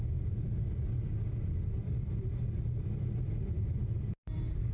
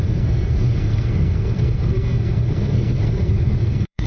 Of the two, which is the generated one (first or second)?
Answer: second